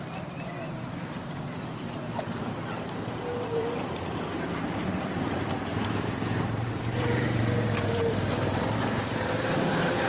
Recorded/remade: remade